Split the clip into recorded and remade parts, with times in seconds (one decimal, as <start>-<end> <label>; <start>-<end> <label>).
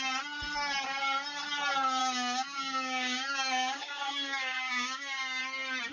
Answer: 0.0-2.0 recorded; 2.0-5.4 remade; 5.4-5.9 recorded